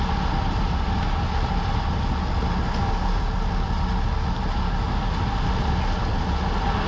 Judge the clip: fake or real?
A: real